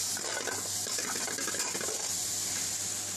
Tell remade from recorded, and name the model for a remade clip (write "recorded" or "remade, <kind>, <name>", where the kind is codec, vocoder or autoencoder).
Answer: recorded